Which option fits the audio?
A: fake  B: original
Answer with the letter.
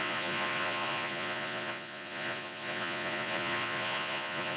A